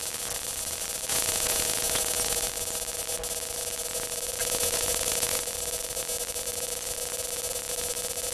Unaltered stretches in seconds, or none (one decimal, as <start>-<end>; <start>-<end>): 0.0-1.1; 2.5-4.4; 5.4-8.3